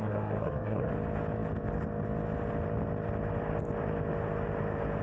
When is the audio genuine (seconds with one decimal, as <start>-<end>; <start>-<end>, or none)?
0.9-5.0